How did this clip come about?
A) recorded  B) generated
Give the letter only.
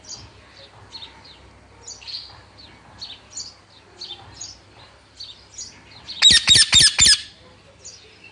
A